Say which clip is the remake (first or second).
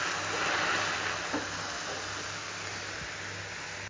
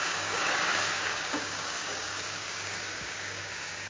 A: second